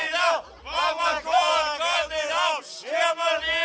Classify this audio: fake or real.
real